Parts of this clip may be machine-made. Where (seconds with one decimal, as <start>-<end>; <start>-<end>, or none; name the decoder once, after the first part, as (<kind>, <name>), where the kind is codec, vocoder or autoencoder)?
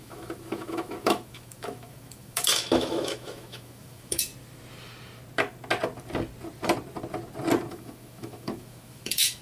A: 0.0-4.3 (autoencoder, DAC-VAE); 7.7-9.4